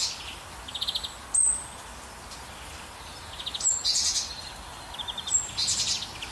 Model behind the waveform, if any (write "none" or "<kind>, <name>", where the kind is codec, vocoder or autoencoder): none